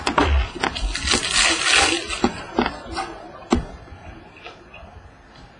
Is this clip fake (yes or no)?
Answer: no